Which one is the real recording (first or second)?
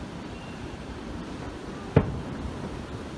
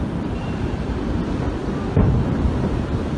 second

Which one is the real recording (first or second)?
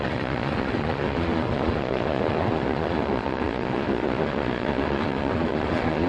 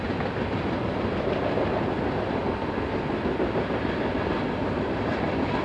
second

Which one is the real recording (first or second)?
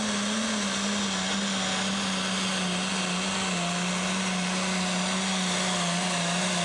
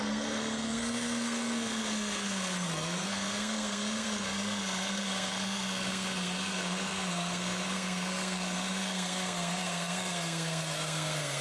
first